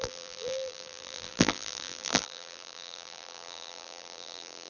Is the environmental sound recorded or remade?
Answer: remade